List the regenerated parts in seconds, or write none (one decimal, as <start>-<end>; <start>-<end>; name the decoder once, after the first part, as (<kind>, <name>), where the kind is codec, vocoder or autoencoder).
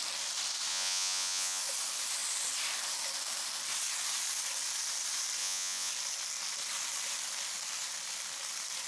0.7-1.6 (vocoder, Vocos); 5.4-5.9